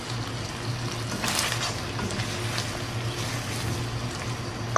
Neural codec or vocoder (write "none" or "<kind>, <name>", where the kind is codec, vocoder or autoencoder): none